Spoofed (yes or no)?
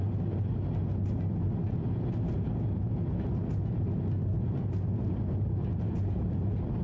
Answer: no